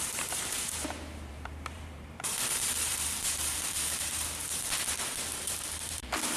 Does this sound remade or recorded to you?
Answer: remade